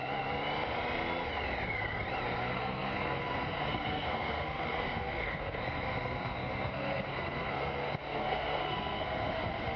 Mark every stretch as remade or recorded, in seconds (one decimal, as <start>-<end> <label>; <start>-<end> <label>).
0.0-2.4 recorded; 2.4-9.8 remade